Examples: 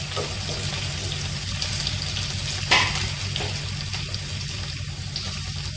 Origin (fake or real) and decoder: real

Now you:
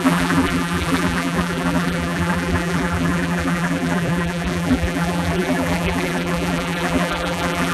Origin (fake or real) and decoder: fake, vocoder, BigVGAN v2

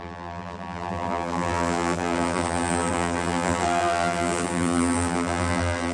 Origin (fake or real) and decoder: fake, vocoder, BigVGAN v2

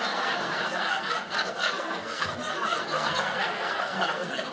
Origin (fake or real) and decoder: fake, codec, SNAC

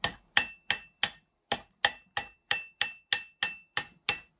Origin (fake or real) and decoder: real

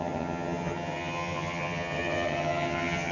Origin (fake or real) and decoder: fake, vocoder, HiFi-GAN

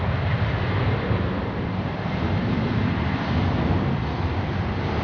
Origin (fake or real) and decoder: real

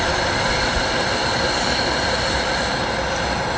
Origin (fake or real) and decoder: real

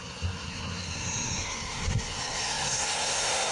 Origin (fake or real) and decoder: fake, codec, SNAC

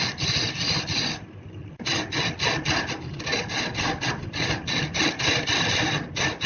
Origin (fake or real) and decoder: real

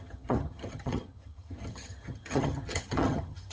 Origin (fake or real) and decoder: fake, vocoder, HiFi-GAN